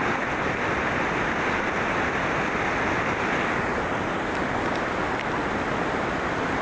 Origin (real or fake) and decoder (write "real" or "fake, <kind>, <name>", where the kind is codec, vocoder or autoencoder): real